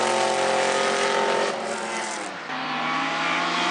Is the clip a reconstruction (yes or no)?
no